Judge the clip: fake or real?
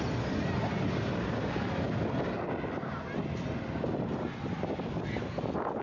real